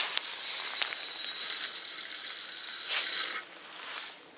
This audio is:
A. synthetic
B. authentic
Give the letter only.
B